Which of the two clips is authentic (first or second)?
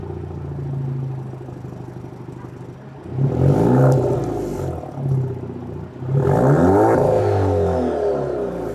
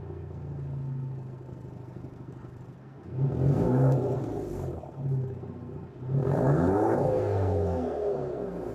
first